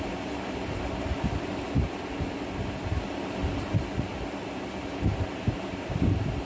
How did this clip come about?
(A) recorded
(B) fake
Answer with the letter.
A